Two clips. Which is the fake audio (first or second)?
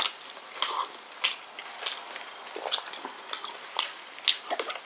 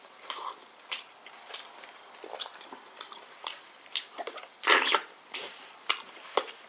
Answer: second